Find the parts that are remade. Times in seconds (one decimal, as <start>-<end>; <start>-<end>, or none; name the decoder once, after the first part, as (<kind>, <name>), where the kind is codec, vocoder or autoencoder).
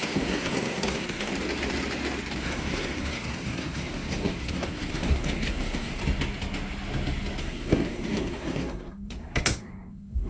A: 0.0-1.3 (codec, SNAC); 2.4-6.0; 7.4-10.3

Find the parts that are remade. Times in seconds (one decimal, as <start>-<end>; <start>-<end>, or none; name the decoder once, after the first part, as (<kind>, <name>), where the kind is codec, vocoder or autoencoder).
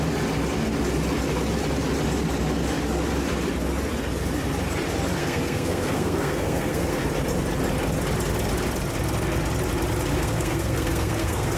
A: 5.2-7.0 (codec, SNAC); 10.1-11.6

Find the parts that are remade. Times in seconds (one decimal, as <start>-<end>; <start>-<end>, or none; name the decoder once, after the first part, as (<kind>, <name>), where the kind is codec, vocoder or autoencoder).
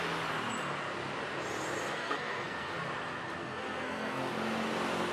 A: 1.9-2.7 (codec, SNAC); 3.4-4.3